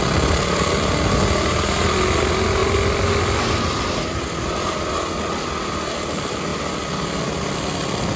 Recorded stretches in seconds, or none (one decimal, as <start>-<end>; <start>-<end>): 0.0-8.2